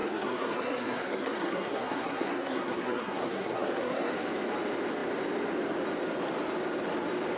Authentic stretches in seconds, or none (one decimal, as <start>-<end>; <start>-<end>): 4.1-7.4